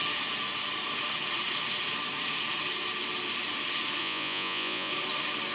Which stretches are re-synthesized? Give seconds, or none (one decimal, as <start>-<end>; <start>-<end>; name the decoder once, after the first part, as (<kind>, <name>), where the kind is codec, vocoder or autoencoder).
4.0-4.9 (vocoder, Vocos)